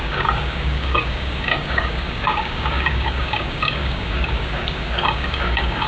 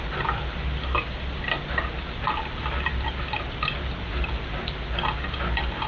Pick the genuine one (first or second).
second